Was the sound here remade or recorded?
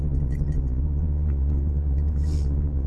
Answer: remade